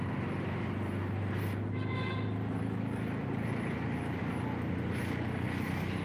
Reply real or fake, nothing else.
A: real